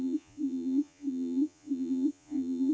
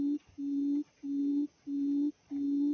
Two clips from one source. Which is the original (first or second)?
second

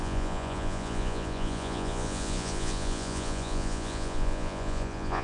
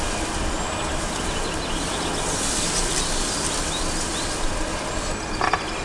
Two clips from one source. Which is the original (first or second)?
second